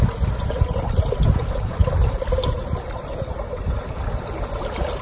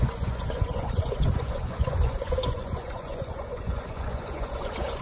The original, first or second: first